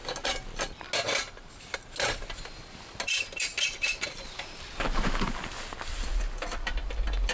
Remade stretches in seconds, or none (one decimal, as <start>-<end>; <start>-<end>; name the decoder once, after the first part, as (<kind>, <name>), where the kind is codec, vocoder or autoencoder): 3.5-5.0 (vocoder, BigVGAN v2)